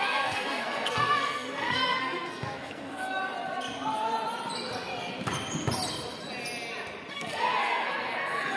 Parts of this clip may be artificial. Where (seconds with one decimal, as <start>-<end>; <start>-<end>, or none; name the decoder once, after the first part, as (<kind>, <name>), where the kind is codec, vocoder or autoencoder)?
0.0-3.2 (codec, SNAC); 7.1-8.6